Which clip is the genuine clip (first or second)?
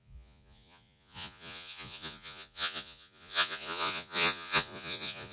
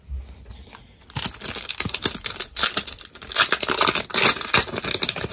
second